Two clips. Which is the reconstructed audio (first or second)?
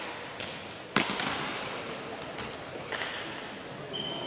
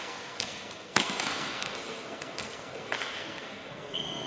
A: second